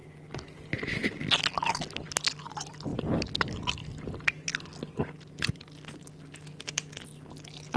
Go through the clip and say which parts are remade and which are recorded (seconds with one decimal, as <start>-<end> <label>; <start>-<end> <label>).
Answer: 0.0-7.8 recorded